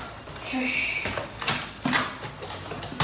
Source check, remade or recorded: recorded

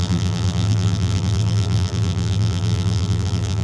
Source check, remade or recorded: remade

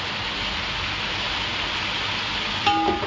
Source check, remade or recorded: recorded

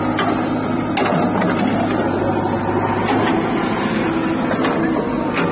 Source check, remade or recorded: recorded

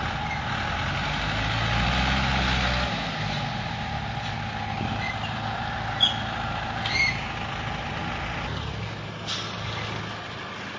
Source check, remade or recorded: recorded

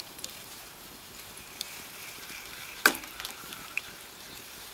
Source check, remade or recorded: remade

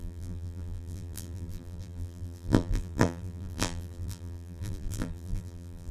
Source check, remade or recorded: remade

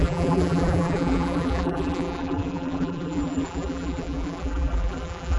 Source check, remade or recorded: remade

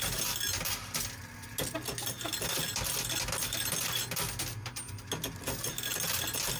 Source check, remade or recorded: recorded